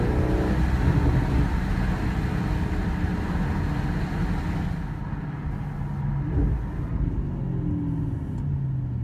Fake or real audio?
real